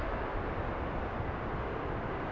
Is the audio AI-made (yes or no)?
no